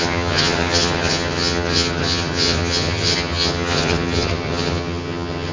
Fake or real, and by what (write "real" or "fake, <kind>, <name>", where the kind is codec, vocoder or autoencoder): fake, vocoder, HiFi-GAN